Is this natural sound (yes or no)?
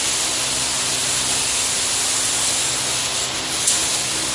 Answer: yes